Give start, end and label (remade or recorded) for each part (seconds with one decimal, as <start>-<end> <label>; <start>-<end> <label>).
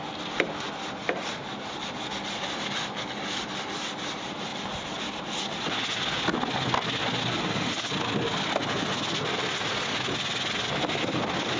0.0-11.6 recorded